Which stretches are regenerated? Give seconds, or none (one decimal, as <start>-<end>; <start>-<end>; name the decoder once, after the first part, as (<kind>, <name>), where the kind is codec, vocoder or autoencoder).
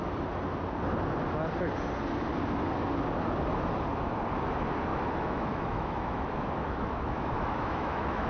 4.9-8.3 (autoencoder, DAC-VAE)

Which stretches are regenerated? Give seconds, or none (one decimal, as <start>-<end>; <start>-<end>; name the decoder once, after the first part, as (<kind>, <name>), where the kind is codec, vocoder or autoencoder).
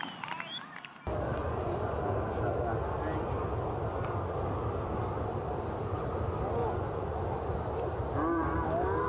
1.4-2.0 (vocoder, Vocos); 6.6-7.3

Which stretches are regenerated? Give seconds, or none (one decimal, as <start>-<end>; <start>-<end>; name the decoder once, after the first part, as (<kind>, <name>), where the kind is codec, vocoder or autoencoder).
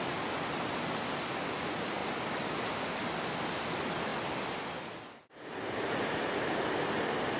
none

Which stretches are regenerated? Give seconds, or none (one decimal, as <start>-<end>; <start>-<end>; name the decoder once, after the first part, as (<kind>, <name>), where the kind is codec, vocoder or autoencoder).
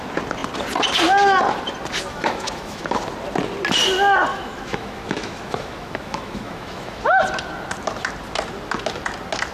2.1-3.0 (autoencoder, DAC-VAE); 4.3-7.0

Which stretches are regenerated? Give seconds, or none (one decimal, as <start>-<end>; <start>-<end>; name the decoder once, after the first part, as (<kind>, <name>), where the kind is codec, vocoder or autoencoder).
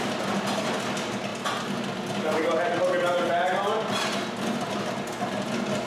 none